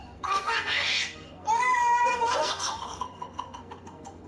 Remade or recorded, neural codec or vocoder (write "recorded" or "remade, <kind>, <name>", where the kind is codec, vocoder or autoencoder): remade, codec, SNAC